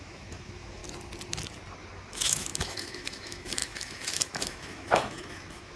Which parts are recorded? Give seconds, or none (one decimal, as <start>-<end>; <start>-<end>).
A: 0.8-2.1